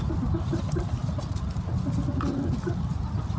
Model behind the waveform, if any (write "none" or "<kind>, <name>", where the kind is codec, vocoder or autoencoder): none